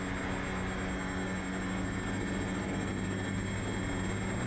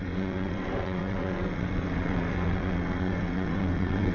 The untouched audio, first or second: first